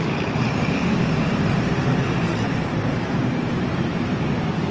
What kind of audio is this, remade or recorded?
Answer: remade